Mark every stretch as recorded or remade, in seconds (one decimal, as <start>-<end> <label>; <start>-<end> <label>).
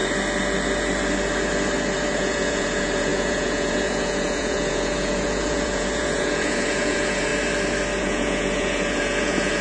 0.0-2.2 recorded; 2.2-7.3 remade; 7.3-8.0 recorded; 8.0-9.6 remade